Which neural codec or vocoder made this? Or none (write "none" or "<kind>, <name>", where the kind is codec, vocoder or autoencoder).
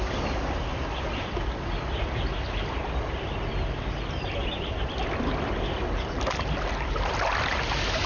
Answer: none